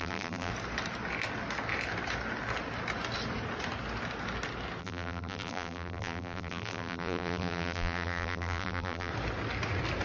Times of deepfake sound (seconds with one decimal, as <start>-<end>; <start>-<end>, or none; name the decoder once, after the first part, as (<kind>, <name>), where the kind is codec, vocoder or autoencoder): 0.0-0.5 (vocoder, BigVGAN v2); 4.8-9.1

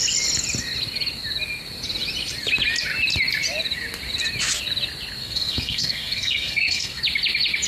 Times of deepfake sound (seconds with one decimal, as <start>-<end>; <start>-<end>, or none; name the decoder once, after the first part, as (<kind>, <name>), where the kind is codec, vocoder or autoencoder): 5.2-7.0 (codec, SNAC)

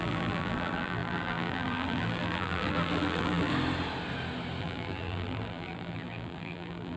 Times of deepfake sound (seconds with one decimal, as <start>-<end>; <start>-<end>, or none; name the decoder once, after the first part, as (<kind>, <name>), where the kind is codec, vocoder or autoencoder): 0.0-3.5 (vocoder, BigVGAN v2); 4.6-7.0

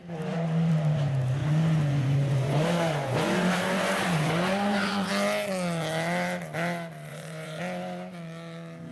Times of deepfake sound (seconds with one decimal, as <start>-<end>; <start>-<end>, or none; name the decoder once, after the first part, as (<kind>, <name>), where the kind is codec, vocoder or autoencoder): 1.4-5.1 (vocoder, Vocos); 7.1-7.6

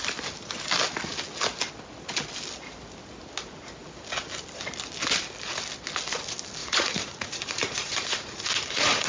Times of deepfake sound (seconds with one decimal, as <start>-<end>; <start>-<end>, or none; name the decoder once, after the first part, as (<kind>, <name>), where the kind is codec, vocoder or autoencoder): 6.6-9.1 (vocoder, Vocos)

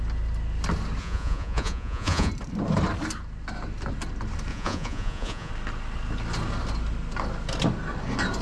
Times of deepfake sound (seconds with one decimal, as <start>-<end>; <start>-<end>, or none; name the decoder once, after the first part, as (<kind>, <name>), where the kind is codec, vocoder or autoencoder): 1.0-2.3 (vocoder, Vocos); 4.5-5.5

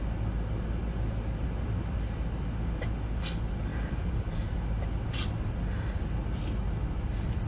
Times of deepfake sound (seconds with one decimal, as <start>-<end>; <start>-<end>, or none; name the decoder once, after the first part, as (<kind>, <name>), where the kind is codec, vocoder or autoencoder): 3.7-4.3 (vocoder, BigVGAN v2)